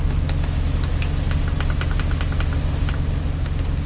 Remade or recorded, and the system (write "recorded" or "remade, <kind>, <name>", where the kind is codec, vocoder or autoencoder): recorded